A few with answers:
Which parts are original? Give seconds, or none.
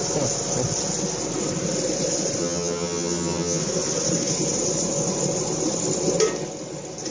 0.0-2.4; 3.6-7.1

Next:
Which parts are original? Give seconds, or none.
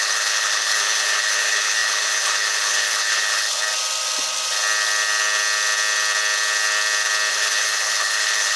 3.6-7.3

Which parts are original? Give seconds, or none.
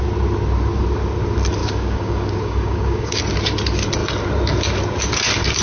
0.0-1.6; 3.2-5.6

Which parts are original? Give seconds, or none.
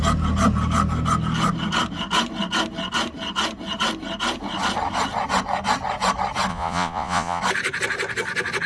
0.0-6.5; 7.4-8.7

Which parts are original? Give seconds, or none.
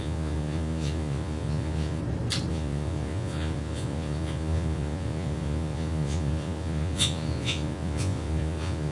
2.0-2.5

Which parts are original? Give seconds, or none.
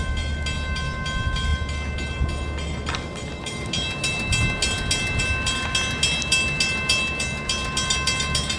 0.0-8.6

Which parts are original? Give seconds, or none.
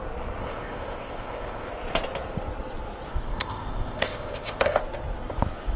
0.0-0.4; 1.7-3.1; 4.8-5.8